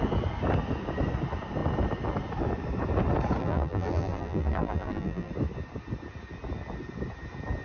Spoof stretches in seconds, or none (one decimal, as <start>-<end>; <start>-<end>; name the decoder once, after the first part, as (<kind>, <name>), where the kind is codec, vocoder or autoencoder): 3.4-5.3 (vocoder, BigVGAN v2)